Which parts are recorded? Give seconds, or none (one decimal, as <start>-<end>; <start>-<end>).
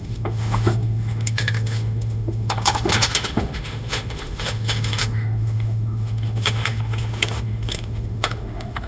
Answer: none